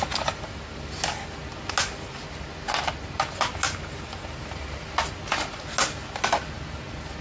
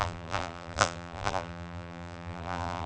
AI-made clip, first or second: second